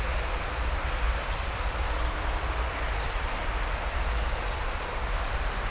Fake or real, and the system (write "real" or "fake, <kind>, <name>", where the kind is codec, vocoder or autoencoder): real